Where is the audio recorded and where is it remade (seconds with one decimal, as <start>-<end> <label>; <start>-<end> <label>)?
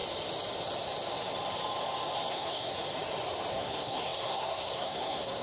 0.0-2.3 recorded; 2.3-2.7 remade; 2.7-3.5 recorded; 3.5-5.4 remade